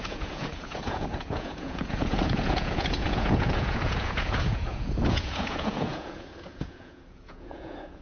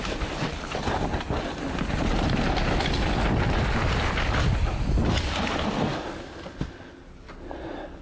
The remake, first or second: first